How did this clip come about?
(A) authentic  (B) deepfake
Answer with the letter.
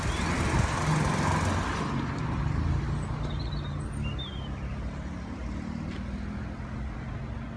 A